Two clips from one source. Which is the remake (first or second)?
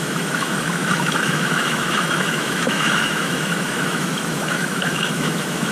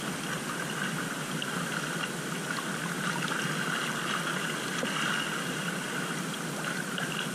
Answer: first